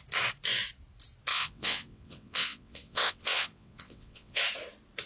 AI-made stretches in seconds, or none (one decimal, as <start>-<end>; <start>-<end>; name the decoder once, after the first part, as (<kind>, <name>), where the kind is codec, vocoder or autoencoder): 1.3-4.4 (vocoder, WaveNeXt)